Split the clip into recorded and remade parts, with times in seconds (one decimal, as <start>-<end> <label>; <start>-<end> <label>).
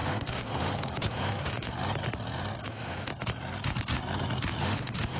0.0-1.7 remade; 1.7-2.6 recorded; 2.6-3.1 remade; 3.1-4.6 recorded; 4.6-5.2 remade